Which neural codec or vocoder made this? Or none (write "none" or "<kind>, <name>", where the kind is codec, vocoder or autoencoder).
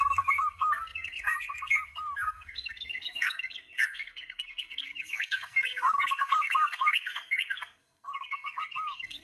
codec, SNAC